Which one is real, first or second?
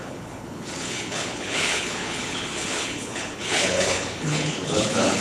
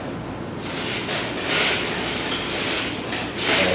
second